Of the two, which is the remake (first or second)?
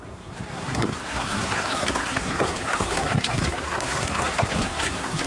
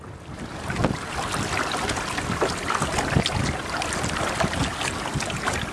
first